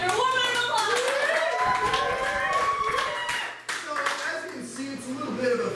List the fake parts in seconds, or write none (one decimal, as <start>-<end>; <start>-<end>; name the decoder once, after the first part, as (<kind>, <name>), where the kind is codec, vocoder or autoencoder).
0.0-3.4 (vocoder, BigVGAN v2)